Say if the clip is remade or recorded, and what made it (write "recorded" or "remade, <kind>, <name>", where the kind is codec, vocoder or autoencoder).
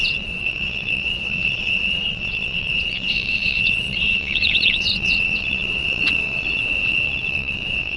remade, vocoder, WaveNeXt